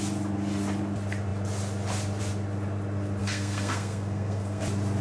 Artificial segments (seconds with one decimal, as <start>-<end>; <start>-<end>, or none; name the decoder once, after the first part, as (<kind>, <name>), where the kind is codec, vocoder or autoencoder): 3.2-4.6 (codec, SNAC)